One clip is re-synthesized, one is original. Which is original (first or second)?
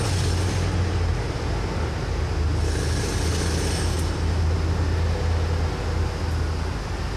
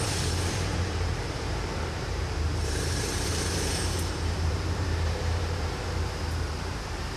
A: first